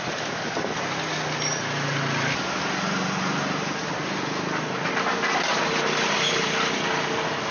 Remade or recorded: recorded